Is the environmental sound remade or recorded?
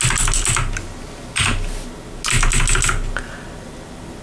recorded